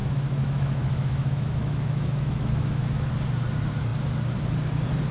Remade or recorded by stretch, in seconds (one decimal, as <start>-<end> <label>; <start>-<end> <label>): 0.0-3.1 remade; 3.1-5.1 recorded